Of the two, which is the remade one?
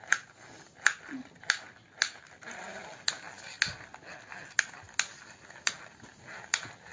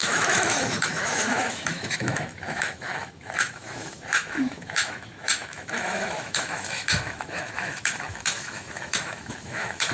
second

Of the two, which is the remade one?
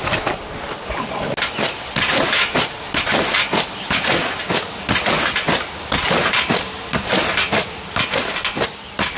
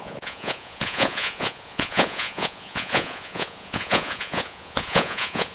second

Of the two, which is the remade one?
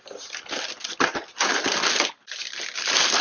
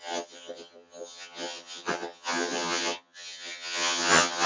second